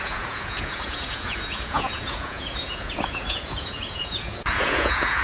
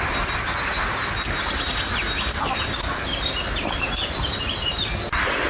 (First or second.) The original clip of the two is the second